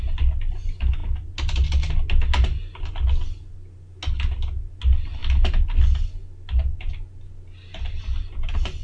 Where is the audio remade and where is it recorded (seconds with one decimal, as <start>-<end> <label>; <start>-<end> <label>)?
0.0-8.8 recorded

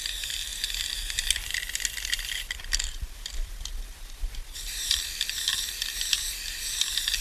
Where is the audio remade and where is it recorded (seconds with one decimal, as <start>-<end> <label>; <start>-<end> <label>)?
0.0-7.2 remade

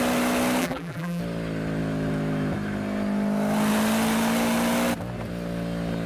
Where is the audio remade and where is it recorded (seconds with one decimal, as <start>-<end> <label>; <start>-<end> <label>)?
0.0-0.6 recorded; 0.6-1.2 remade; 1.2-6.1 recorded

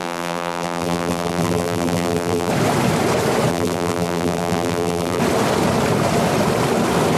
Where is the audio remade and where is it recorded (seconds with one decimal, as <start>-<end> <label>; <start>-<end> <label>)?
0.0-2.5 remade; 2.5-3.5 recorded; 3.5-5.2 remade; 5.2-7.2 recorded